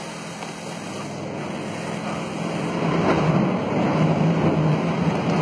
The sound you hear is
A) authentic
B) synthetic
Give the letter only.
A